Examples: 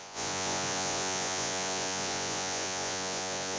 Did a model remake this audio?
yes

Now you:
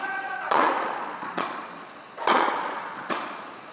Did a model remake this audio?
yes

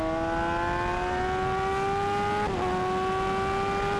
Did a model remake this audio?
no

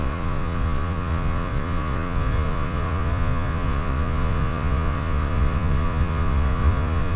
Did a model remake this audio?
yes